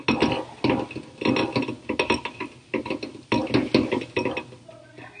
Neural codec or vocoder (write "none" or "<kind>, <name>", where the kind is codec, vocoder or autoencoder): none